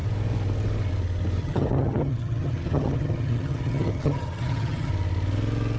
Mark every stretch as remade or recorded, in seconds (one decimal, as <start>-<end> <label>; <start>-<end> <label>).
0.0-1.4 recorded; 1.4-4.9 remade; 4.9-5.8 recorded